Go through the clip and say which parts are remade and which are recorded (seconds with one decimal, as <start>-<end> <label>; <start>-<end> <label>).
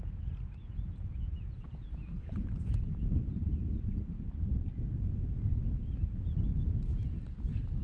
0.0-0.6 recorded; 0.6-3.1 remade; 3.1-7.8 recorded